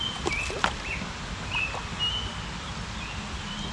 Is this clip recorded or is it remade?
recorded